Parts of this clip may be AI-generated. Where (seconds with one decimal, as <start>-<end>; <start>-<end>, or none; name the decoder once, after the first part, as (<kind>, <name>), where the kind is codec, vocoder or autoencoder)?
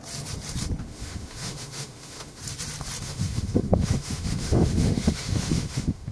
0.8-2.4 (autoencoder, DAC-VAE); 3.0-6.1